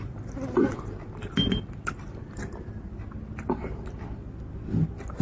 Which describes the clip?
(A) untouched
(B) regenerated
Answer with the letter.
A